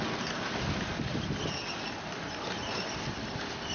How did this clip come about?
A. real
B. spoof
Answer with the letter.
A